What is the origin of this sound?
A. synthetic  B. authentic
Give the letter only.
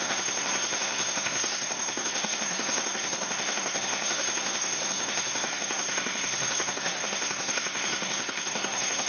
A